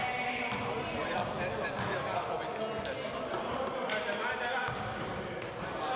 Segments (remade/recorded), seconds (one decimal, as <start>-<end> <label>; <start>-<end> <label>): 0.0-6.0 recorded